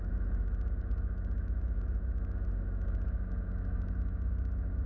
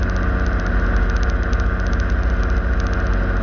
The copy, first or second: first